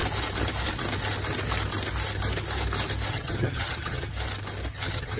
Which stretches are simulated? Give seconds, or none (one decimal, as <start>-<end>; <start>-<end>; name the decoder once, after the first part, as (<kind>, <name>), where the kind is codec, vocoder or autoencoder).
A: 3.1-4.1 (vocoder, HiFi-GAN); 4.7-5.2